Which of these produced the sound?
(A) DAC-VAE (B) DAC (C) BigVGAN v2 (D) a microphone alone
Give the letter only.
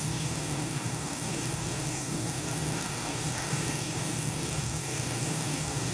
B